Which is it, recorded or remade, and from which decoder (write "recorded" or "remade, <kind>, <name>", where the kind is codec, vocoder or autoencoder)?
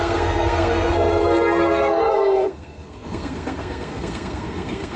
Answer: remade, codec, SNAC